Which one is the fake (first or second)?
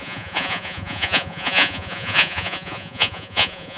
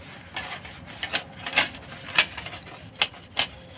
first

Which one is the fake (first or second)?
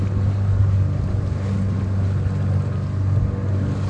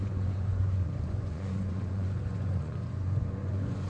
second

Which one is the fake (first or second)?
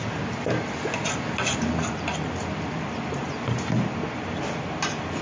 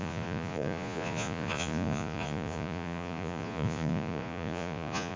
second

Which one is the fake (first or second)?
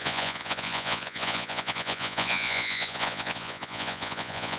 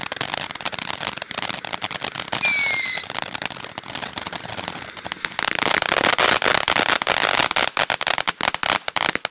first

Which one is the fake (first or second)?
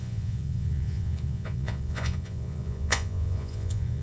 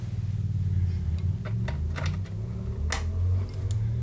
first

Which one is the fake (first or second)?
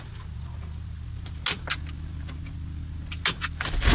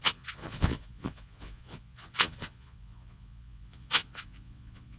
second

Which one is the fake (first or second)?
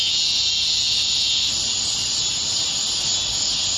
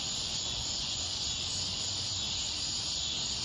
second